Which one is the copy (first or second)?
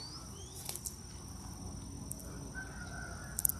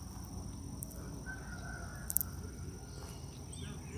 second